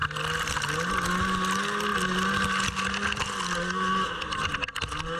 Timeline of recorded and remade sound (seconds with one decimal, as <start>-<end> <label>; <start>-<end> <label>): 0.0-5.2 recorded